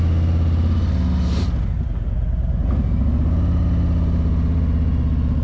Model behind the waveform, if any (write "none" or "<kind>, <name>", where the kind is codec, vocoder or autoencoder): none